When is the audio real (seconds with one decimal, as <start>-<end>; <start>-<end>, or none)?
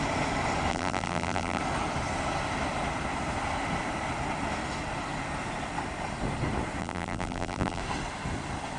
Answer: 0.0-0.7; 1.6-6.8; 7.8-8.8